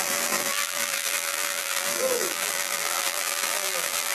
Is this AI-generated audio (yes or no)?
yes